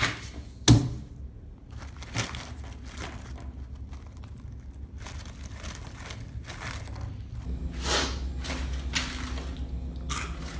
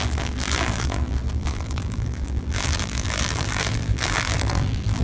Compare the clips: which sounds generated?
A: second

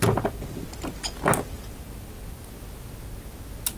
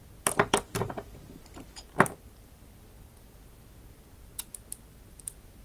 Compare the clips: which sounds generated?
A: second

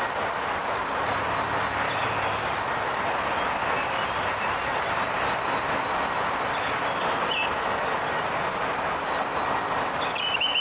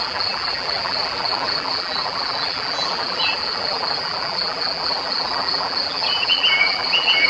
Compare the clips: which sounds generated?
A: second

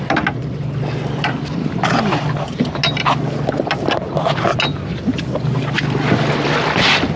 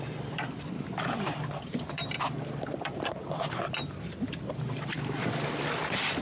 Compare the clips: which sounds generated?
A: second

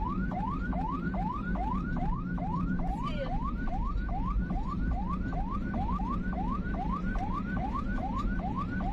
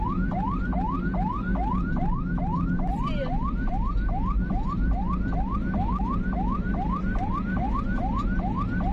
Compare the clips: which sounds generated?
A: first